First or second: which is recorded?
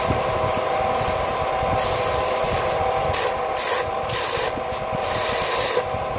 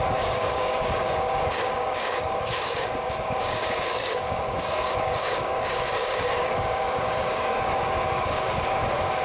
first